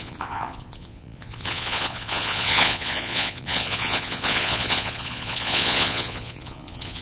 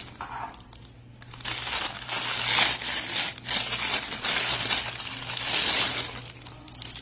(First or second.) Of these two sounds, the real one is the second